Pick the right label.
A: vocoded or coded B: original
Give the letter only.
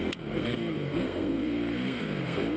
A